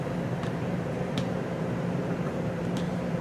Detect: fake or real fake